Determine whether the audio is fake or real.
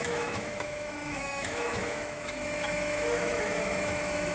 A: fake